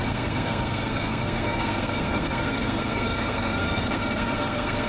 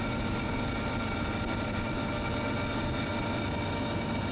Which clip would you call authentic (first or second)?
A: second